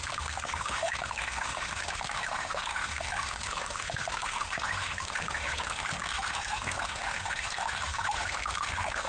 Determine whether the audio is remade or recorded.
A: remade